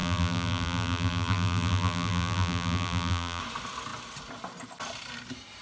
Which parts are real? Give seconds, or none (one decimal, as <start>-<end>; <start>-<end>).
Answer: 3.4-5.6